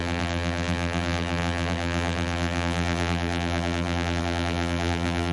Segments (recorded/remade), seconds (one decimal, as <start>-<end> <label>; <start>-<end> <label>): 0.0-5.3 remade